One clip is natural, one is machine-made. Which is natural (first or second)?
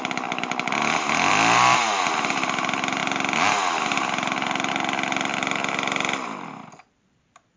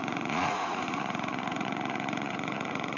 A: first